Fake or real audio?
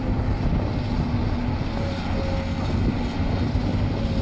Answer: real